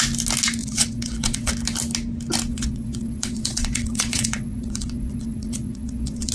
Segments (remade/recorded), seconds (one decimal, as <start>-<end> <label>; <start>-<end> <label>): 0.0-0.6 recorded; 0.6-1.5 remade; 1.5-2.5 recorded; 2.5-6.3 remade